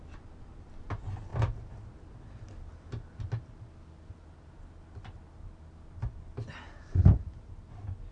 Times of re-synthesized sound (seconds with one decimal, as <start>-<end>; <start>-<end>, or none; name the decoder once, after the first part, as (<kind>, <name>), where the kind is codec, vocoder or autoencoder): none